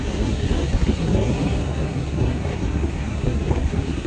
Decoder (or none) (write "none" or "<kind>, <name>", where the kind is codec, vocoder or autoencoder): codec, SNAC